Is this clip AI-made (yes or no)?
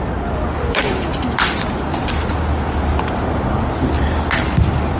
no